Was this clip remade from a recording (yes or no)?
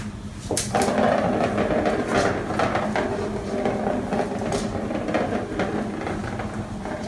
no